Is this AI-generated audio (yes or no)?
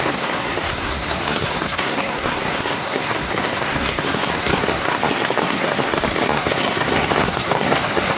yes